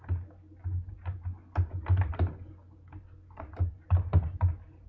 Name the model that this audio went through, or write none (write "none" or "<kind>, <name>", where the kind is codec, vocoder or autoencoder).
none